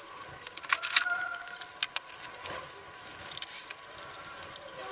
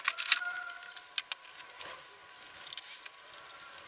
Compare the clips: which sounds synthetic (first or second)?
first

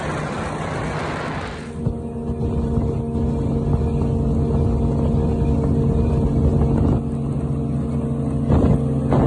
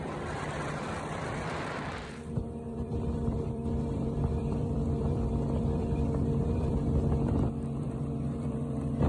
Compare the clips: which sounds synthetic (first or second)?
second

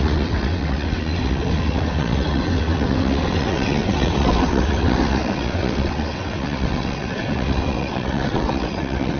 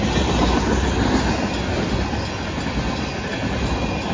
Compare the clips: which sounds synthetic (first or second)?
first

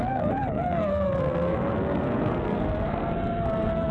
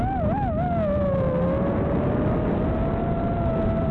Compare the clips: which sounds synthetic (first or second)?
first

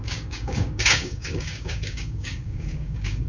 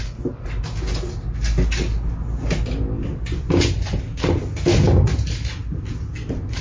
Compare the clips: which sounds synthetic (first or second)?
first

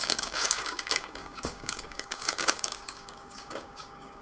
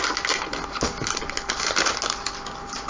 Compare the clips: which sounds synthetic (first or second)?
first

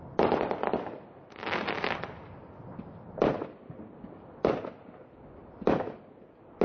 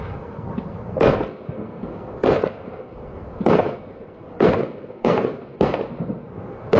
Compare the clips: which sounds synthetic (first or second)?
second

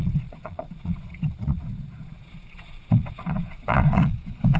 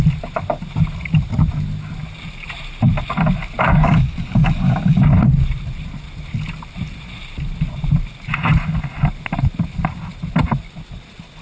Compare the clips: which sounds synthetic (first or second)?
first